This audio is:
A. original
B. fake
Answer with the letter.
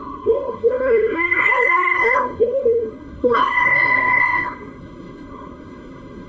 B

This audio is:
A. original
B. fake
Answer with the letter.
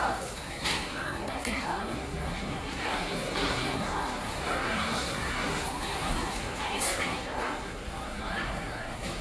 B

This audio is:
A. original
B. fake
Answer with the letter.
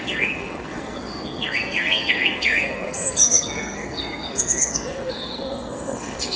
B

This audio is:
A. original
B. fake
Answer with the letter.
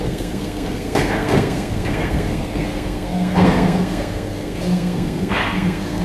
B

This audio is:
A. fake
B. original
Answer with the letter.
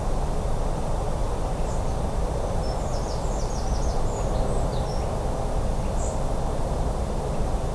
B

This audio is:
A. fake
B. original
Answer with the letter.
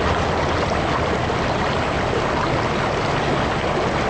B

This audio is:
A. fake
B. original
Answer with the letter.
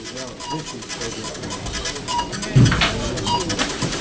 B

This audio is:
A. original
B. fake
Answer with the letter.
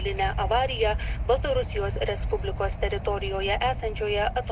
A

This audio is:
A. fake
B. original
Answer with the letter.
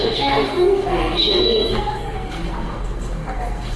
A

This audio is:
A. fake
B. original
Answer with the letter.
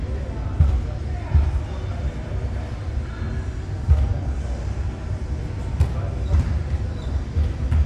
B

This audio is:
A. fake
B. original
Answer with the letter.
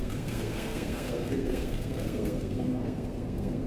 A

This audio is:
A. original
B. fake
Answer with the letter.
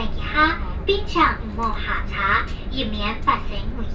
A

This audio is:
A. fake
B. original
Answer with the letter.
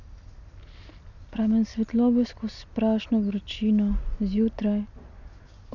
B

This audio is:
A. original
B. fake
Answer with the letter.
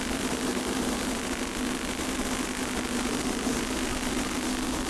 A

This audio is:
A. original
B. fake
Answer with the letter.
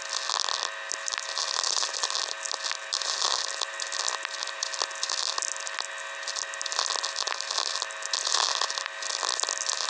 A